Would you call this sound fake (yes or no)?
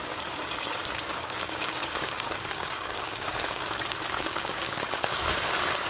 yes